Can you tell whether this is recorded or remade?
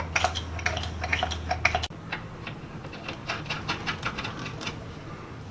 recorded